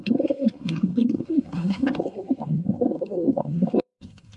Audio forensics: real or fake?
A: fake